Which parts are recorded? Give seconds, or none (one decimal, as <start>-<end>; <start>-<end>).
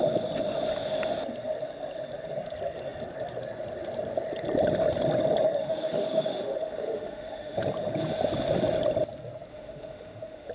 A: 0.0-5.6; 7.6-9.5